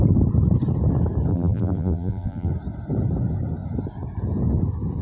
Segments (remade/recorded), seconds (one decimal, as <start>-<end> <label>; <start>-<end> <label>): 0.0-1.3 recorded; 1.3-2.5 remade; 2.5-5.0 recorded